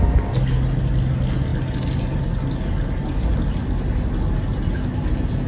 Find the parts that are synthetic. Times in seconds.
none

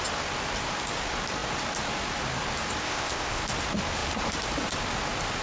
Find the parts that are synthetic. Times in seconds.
2.8-3.4 (codec, ZipCodec)

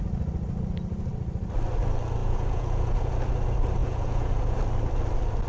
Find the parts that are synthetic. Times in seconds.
2.2-3.1 (vocoder, Vocos); 3.8-4.6

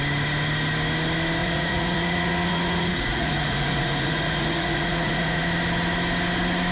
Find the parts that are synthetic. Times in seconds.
1.4-5.4 (vocoder, Vocos)

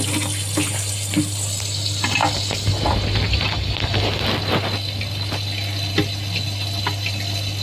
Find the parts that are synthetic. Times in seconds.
none

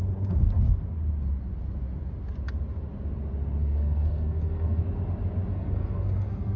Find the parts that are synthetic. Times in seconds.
3.6-4.8 (codec, SNAC); 5.5-6.6

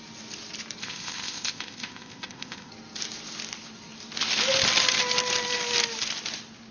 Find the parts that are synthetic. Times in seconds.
0.8-2.7 (codec, ZipCodec)